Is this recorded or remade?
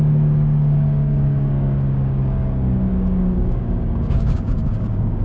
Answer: remade